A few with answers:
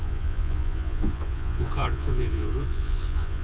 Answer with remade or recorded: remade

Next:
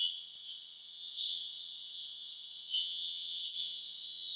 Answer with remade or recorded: remade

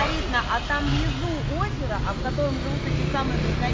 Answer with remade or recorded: recorded